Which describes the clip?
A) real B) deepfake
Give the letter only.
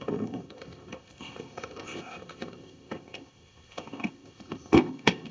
B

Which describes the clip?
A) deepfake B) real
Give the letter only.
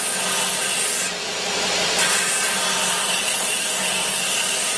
B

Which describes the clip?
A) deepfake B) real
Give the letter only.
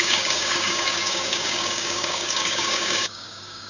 A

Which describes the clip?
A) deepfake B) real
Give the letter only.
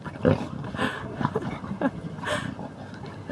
B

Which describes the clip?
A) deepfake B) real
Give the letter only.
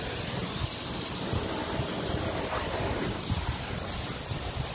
B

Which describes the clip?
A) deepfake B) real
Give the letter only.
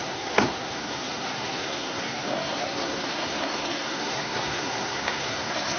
A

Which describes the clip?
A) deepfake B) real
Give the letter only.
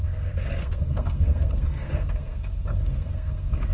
A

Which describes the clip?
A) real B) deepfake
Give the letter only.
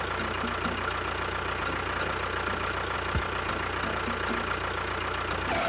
A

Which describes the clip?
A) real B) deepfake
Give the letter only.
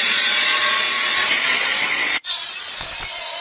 B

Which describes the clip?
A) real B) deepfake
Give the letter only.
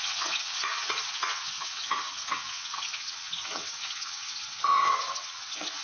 B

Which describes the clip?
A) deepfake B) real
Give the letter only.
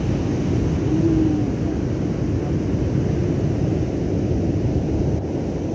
B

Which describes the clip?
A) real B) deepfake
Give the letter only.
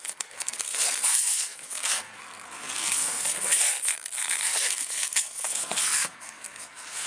B